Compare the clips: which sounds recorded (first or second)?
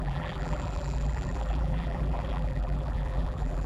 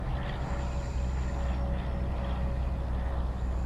second